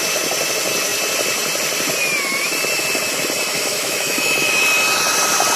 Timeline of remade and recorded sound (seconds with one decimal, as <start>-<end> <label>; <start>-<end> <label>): 0.0-3.5 recorded; 3.5-4.6 remade; 4.6-5.6 recorded